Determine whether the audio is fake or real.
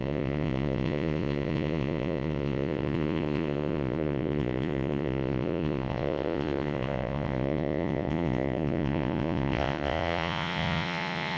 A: fake